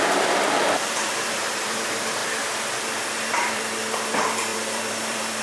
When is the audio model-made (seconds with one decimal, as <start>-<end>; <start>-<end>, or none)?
0.0-2.2; 3.3-5.4